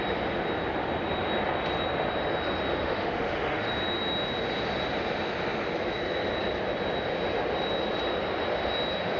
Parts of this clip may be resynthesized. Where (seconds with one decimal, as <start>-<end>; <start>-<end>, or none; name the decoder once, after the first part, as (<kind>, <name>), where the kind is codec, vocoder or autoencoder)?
2.8-3.7 (autoencoder, DAC-VAE)